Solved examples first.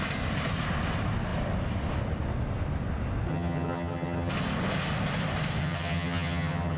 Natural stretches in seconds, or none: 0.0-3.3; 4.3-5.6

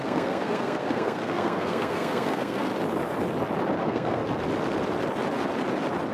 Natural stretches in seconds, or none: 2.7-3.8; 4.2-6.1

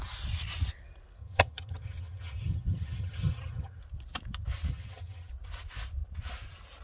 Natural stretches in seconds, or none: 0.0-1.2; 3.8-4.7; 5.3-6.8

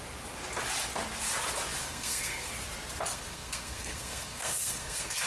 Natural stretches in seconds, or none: 0.0-1.8; 2.5-3.1

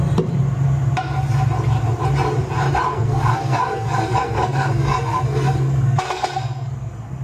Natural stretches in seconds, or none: 0.0-2.9

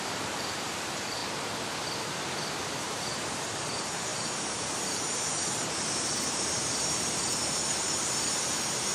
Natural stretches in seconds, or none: 1.2-2.8

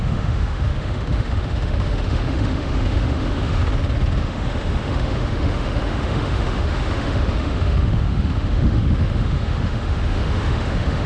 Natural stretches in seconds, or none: 3.6-4.2